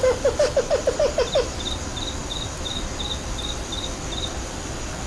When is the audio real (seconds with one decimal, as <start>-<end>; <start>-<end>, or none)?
1.9-5.1